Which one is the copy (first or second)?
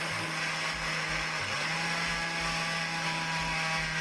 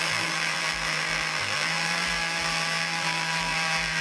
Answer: second